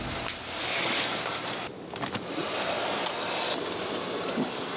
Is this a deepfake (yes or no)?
no